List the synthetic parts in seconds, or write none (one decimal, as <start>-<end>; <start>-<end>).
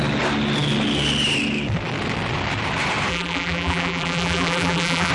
3.1-5.1